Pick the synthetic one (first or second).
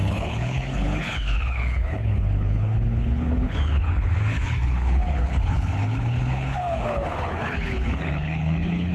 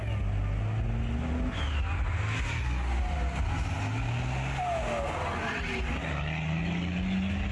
first